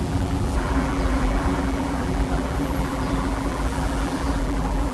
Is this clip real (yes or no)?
no